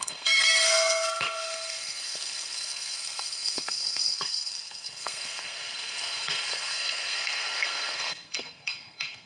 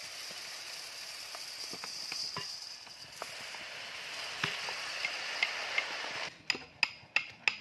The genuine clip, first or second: second